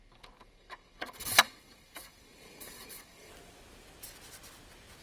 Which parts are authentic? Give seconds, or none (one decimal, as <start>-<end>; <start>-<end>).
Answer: 3.3-5.0